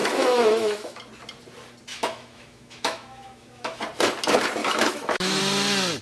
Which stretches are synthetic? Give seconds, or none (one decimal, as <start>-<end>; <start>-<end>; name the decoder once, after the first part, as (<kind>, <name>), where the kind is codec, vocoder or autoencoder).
0.0-1.0 (autoencoder, DAC-VAE); 1.9-3.8; 4.6-5.4